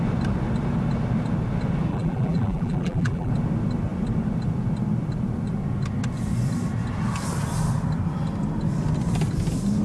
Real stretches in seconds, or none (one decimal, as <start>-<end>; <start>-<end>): 0.0-1.9; 3.3-9.8